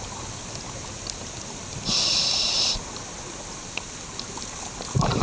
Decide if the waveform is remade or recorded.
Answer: recorded